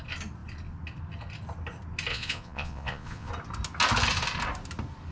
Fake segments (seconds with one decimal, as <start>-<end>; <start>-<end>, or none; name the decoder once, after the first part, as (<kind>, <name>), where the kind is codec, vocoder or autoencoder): 2.1-3.3 (vocoder, Vocos)